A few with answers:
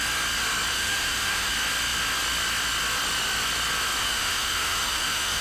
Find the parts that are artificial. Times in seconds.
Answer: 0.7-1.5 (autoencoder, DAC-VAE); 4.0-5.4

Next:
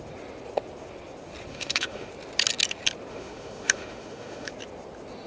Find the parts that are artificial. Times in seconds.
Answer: 1.5-2.1 (autoencoder, DAC-VAE); 3.1-4.5

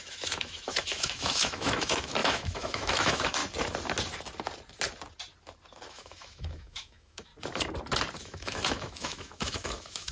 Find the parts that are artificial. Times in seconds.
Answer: 0.0-3.4 (autoencoder, DAC-VAE); 5.9-7.3; 8.2-10.1